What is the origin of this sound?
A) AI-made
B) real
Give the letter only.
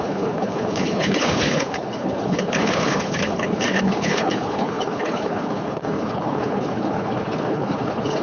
A